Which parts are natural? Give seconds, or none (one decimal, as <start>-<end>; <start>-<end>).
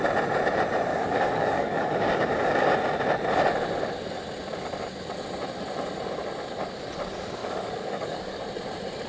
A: 0.0-0.9; 2.7-7.4; 8.4-9.1